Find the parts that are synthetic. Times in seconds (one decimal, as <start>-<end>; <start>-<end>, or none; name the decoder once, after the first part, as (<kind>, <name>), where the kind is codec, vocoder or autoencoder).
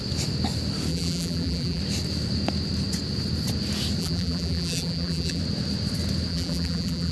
0.9-1.8 (vocoder, BigVGAN v2); 4.0-5.4; 6.3-7.1